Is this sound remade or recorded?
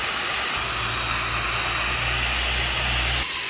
recorded